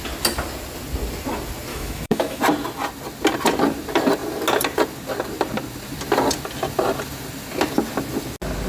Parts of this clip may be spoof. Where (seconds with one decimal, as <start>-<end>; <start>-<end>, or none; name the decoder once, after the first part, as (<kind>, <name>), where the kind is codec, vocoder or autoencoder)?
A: 1.7-2.4 (autoencoder, DAC-VAE)